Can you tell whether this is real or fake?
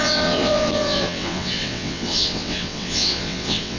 fake